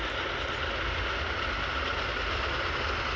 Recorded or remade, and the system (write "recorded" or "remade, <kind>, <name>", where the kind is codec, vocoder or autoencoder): recorded